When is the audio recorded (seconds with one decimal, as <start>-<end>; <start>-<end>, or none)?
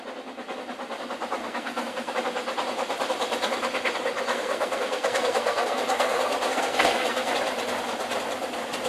0.0-1.4; 2.1-4.3; 7.3-8.9